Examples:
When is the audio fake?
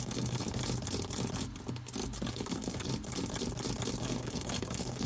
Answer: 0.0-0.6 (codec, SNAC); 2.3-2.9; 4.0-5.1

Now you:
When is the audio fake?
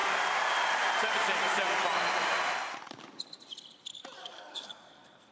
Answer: 4.2-5.3 (codec, SNAC)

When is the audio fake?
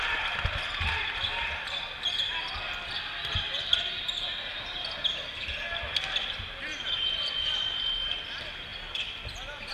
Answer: none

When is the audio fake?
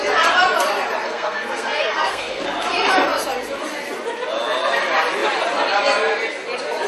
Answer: 1.0-2.4 (codec, SNAC)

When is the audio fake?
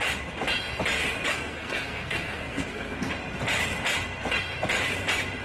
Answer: 1.3-3.1 (codec, SNAC)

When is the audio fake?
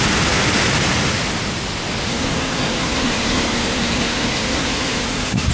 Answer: 2.1-5.5 (codec, SNAC)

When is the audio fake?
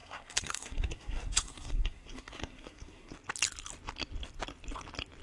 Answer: 0.0-3.1 (codec, SNAC)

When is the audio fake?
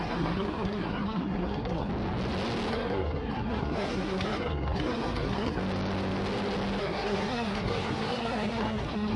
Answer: 0.0-1.9 (codec, SNAC); 2.7-5.6; 6.8-9.2